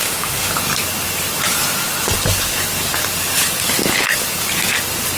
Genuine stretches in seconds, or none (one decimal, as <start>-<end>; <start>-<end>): 0.5-5.2